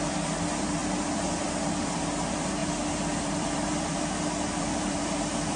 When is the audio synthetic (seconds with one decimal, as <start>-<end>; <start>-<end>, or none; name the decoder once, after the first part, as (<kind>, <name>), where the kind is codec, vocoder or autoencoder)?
0.0-5.6 (vocoder, BigVGAN v2)